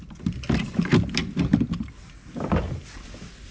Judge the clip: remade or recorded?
recorded